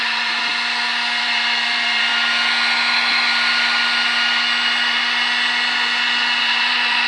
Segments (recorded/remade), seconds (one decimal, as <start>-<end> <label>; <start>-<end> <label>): 0.0-0.5 remade; 0.5-1.2 recorded; 1.2-2.1 remade; 2.1-6.4 recorded; 6.4-7.1 remade